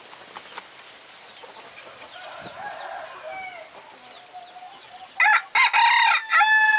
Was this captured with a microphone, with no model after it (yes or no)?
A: yes